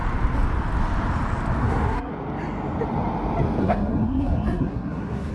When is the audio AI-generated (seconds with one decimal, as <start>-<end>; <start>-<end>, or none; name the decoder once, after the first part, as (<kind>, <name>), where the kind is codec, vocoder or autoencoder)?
1.6-2.1 (codec, SNAC); 3.6-5.3